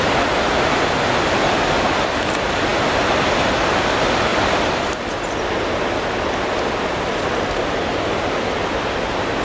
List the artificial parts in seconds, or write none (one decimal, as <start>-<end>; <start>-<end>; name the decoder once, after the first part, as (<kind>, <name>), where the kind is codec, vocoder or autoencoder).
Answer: none